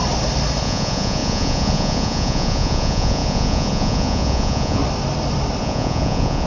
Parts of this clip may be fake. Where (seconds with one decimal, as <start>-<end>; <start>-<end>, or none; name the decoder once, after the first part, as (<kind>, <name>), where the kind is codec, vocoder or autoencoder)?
0.6-4.8 (vocoder, Vocos); 5.6-6.5